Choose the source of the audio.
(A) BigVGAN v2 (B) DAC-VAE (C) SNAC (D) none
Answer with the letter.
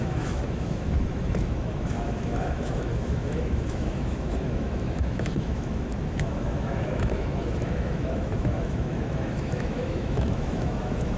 B